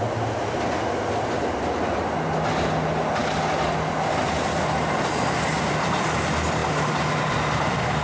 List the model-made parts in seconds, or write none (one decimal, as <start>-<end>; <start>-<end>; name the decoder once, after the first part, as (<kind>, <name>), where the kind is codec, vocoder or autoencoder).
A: none